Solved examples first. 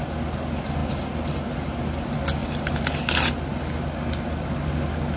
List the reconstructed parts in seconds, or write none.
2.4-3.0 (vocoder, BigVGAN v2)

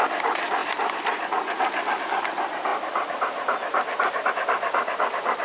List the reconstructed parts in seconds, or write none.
none